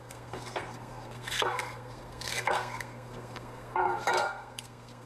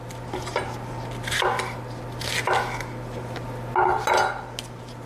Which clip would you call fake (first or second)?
first